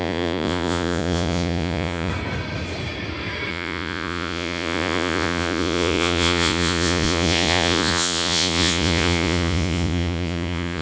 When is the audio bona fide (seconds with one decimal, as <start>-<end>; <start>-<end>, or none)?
2.1-3.5